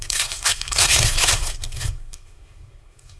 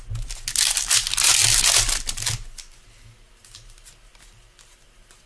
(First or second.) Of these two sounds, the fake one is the first